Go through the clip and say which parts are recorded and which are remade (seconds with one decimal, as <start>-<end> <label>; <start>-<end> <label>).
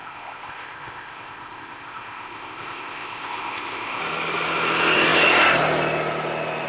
0.0-4.0 remade; 4.0-6.7 recorded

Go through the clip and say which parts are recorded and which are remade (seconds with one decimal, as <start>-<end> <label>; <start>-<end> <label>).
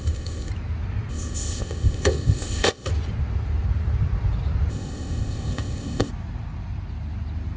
0.0-0.5 remade; 0.5-1.1 recorded; 1.1-2.9 remade; 2.9-4.7 recorded; 4.7-6.1 remade; 6.1-7.6 recorded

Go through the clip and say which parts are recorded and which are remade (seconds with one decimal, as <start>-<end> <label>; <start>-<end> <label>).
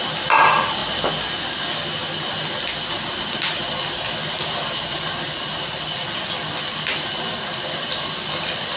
0.0-8.8 recorded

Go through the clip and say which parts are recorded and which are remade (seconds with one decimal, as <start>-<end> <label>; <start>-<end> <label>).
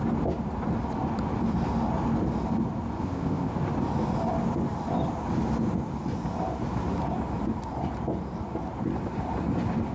0.0-3.0 recorded; 3.0-3.5 remade; 3.5-9.9 recorded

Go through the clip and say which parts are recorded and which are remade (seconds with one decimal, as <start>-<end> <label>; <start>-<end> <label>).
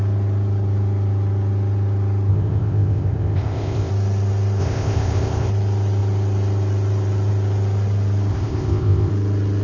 0.0-2.3 recorded; 2.3-3.9 remade; 3.9-4.6 recorded; 4.6-5.5 remade; 5.5-8.3 recorded; 8.3-9.1 remade; 9.1-9.6 recorded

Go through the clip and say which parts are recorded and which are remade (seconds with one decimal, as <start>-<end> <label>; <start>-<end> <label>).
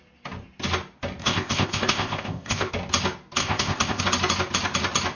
0.0-1.2 recorded; 1.2-2.7 remade; 2.7-3.4 recorded; 3.4-4.0 remade; 4.0-5.2 recorded